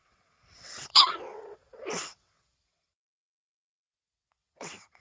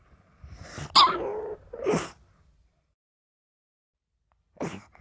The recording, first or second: second